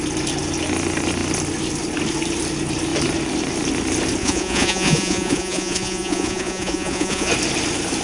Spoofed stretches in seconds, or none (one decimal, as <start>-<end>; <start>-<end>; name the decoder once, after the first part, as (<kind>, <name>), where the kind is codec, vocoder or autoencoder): 4.2-7.3 (vocoder, Vocos)